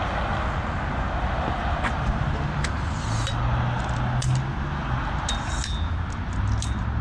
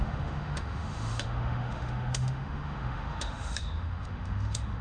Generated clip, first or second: second